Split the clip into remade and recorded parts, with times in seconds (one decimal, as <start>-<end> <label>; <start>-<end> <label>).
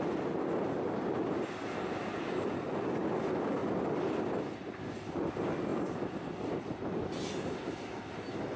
0.0-8.6 recorded